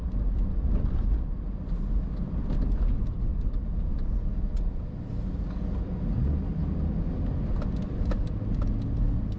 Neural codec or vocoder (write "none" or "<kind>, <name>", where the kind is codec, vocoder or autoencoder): none